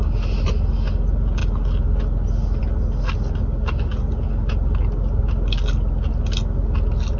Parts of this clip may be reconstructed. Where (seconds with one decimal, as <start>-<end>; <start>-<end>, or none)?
none